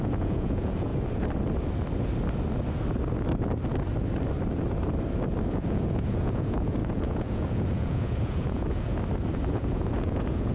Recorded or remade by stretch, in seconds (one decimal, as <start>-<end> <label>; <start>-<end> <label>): 0.0-0.9 remade; 0.9-5.5 recorded; 5.5-8.9 remade; 8.9-9.5 recorded; 9.5-10.5 remade